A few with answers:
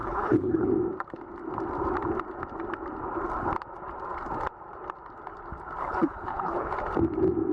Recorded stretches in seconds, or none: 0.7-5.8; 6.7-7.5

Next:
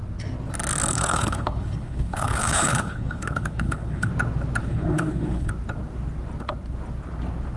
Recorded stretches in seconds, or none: 0.0-0.9; 4.1-4.6; 5.5-7.6